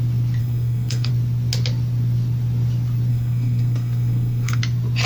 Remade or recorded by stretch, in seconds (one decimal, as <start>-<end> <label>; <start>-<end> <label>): 0.0-0.4 recorded; 0.4-1.1 remade; 1.1-3.1 recorded; 3.1-4.6 remade; 4.6-5.1 recorded